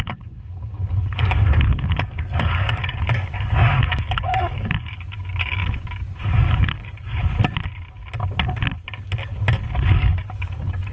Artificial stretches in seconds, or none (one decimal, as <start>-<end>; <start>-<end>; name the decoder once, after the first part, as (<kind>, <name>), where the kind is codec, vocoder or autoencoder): 0.0-7.2 (codec, DAC); 10.0-10.9